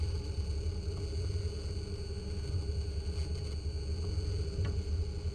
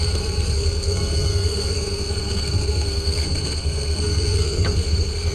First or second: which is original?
first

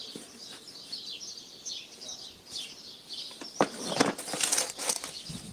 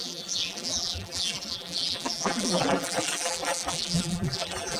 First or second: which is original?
first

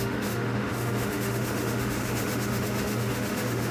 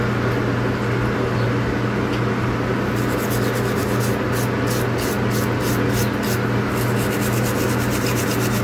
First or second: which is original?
second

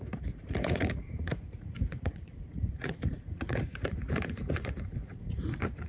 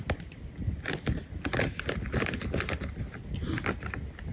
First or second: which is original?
second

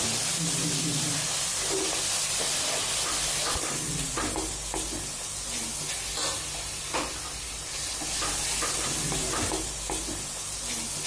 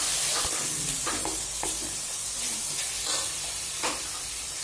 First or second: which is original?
first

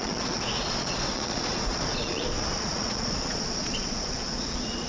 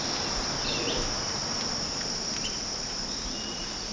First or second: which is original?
second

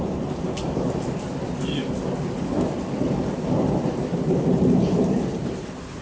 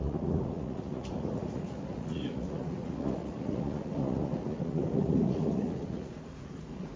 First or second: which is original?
first